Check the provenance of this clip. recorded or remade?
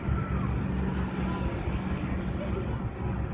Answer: recorded